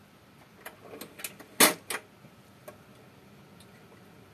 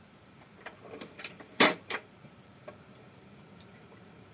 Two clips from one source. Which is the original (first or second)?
first